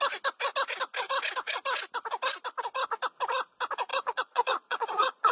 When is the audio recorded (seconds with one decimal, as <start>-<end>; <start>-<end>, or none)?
0.0-3.9